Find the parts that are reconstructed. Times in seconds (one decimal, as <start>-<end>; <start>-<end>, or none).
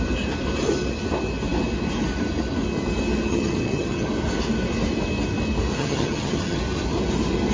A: 3.3-4.1; 5.7-6.6